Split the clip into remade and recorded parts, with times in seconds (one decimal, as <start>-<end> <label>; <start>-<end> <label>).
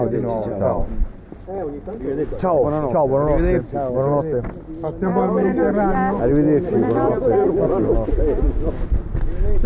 0.0-9.7 recorded